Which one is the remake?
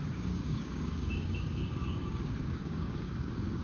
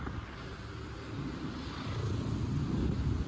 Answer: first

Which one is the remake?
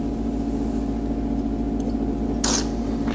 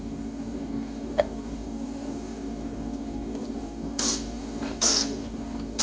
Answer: second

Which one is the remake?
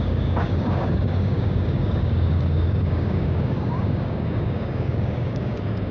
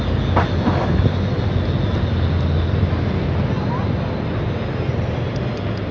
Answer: first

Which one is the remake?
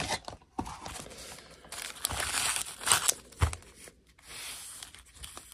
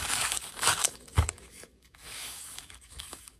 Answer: second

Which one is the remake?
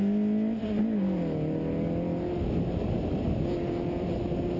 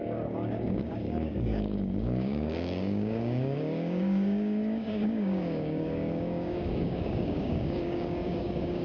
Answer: second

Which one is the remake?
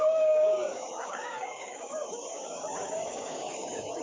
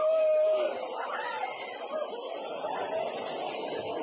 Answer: first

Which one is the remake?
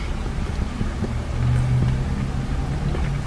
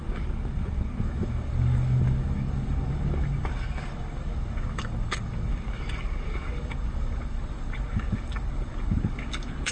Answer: second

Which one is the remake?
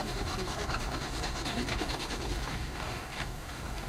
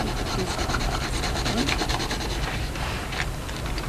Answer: first